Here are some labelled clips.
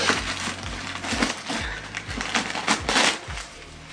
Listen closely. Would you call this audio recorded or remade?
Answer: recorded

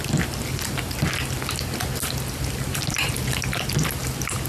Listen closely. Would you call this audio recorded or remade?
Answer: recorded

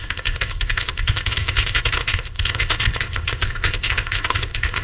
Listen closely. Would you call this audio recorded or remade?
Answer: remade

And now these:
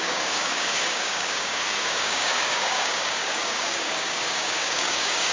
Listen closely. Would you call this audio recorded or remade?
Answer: remade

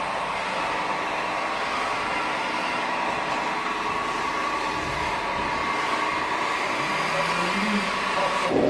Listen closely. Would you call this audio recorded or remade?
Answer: recorded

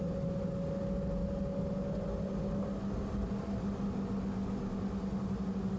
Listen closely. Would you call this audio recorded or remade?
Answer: recorded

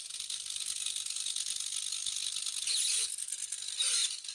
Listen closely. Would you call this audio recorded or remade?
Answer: remade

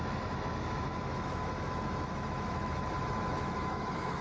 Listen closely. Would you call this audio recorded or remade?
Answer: remade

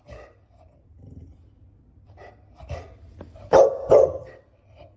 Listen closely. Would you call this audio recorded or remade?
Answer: recorded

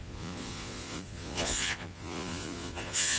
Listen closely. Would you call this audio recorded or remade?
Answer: remade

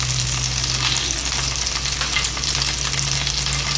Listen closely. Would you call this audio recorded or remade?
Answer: recorded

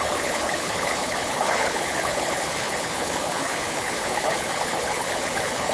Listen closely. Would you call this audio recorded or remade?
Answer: remade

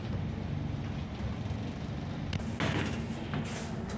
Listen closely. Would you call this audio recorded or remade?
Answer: recorded